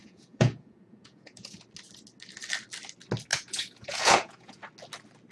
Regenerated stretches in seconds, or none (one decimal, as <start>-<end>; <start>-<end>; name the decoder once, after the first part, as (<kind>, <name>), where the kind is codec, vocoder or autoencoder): 0.0-1.6 (vocoder, Vocos); 3.3-4.6

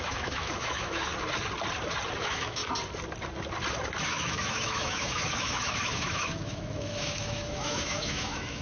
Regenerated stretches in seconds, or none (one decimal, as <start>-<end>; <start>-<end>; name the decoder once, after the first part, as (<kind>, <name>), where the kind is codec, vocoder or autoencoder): 0.0-1.1 (autoencoder, DAC-VAE); 2.2-2.6; 4.0-8.6

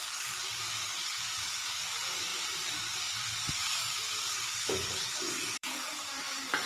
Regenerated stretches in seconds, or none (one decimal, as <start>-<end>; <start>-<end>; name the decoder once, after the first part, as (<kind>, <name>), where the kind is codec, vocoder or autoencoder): 0.0-6.7 (codec, DAC)

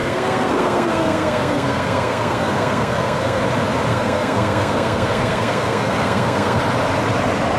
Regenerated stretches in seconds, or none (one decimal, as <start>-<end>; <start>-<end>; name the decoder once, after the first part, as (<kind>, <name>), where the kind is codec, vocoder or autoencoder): 0.0-3.4 (codec, SNAC); 3.9-6.6

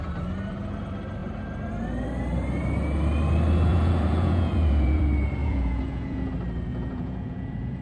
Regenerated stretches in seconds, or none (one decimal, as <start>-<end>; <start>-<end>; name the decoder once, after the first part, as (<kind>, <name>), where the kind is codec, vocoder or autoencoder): 3.7-5.0 (vocoder, Vocos); 5.4-6.3; 6.7-7.8